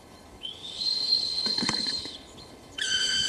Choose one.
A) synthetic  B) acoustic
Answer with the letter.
A